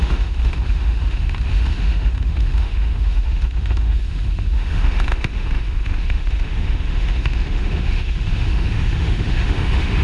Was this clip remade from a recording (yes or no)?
yes